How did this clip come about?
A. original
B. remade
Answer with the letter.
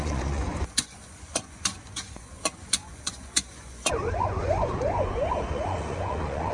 B